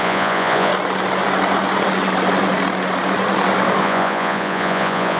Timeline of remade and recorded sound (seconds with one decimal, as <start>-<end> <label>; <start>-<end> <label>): 0.0-0.7 remade; 0.7-3.8 recorded; 3.8-5.2 remade